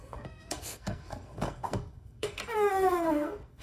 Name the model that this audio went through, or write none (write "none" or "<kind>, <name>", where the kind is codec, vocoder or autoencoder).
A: codec, SNAC